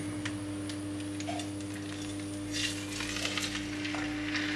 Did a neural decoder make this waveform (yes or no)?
no